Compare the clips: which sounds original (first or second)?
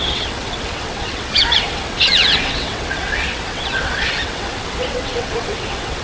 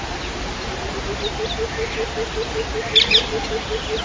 second